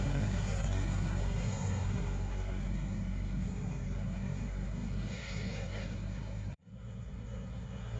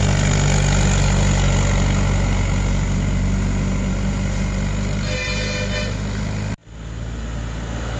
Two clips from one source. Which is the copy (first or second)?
first